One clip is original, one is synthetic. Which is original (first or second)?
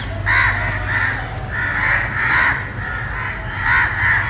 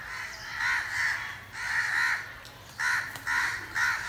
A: first